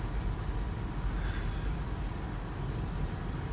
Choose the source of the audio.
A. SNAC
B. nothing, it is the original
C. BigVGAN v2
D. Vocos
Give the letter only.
B